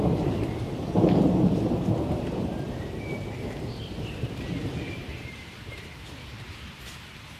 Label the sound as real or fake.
fake